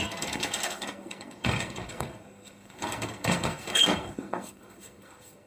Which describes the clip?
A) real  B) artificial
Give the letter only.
B